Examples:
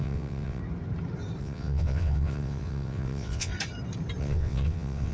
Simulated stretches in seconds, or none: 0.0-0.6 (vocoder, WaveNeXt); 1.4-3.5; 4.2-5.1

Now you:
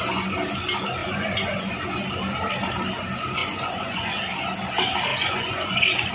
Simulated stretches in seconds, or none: 1.0-1.7 (vocoder, Vocos); 3.4-4.2; 5.1-6.1